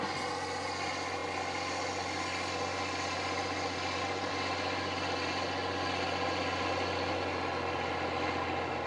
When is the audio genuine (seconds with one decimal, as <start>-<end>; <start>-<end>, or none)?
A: 0.0-8.9